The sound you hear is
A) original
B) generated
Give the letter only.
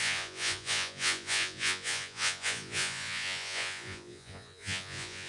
B